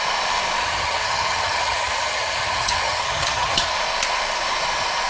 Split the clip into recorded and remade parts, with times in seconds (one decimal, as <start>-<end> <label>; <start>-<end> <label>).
0.0-0.6 recorded; 0.6-3.7 remade; 3.7-5.1 recorded

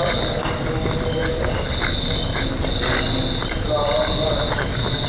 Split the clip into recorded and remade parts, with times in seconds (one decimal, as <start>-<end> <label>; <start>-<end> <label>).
0.0-5.1 recorded

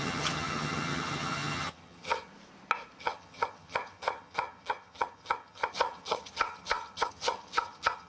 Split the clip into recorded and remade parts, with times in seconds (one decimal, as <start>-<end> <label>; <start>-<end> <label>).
0.0-2.3 remade; 2.3-3.0 recorded; 3.0-8.1 remade